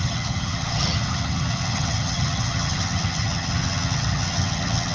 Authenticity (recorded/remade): remade